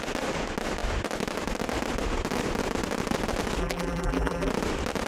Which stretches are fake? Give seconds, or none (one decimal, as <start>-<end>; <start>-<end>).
3.6-4.5